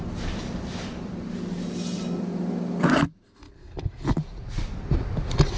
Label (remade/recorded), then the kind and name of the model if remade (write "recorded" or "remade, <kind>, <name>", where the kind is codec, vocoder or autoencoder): recorded